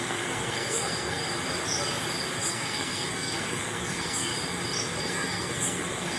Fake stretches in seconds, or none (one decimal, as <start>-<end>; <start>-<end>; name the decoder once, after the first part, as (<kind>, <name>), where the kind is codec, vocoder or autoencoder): 0.0-1.2 (codec, SNAC); 2.5-4.3; 5.0-6.2

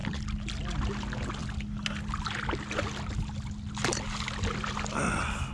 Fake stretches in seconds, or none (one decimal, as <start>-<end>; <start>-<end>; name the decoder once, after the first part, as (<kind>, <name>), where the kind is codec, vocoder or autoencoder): none

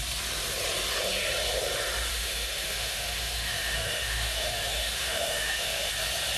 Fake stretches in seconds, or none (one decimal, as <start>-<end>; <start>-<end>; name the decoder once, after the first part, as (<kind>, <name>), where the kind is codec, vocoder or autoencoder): 2.1-5.9 (autoencoder, DAC-VAE)